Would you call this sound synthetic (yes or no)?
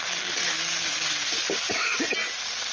no